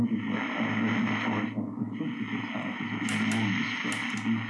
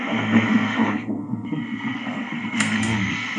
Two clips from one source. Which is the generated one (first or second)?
second